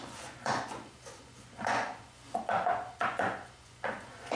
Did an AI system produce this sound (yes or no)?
yes